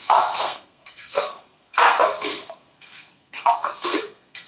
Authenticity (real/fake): fake